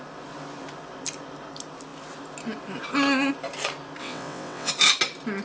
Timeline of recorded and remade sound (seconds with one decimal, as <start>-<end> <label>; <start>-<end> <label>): 0.0-4.0 recorded; 4.0-4.7 remade; 4.7-5.4 recorded